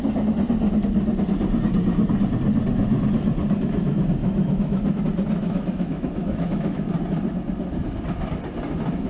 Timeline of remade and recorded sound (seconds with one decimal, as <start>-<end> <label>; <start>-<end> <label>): 0.0-4.2 recorded; 4.2-5.0 remade; 5.0-5.4 recorded; 5.4-6.9 remade; 6.9-9.1 recorded